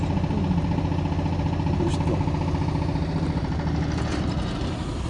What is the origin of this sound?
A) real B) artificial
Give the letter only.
A